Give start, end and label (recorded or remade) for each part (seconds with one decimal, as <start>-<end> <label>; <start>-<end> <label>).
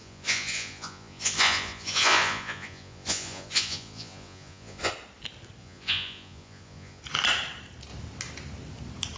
0.0-4.9 remade; 4.9-5.6 recorded; 5.6-7.0 remade; 7.0-9.2 recorded